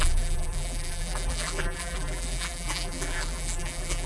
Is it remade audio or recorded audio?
remade